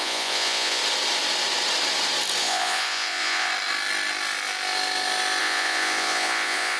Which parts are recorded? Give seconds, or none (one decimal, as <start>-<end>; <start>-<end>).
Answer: 0.8-2.4; 3.5-5.4

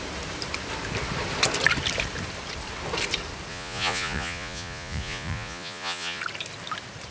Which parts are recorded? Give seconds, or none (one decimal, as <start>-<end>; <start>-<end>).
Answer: 0.0-3.5; 6.2-7.1